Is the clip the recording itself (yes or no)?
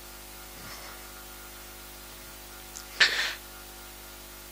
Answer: yes